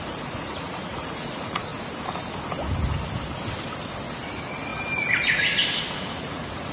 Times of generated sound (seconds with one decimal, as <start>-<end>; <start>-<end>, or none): 0.0-1.7; 4.3-4.7; 5.8-6.7